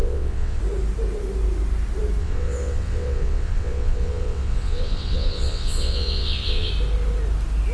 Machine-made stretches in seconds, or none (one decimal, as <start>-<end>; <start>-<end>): 0.0-0.6; 2.2-6.7

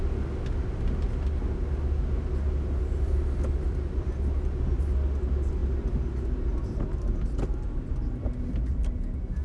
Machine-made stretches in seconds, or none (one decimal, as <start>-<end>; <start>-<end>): none

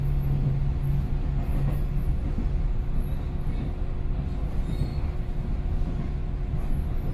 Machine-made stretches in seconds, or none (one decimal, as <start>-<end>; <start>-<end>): 4.9-5.5

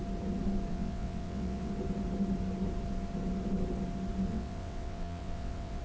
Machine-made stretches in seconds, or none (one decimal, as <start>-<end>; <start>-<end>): 0.7-1.7; 4.3-5.8